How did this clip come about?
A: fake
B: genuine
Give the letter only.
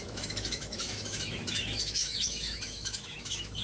A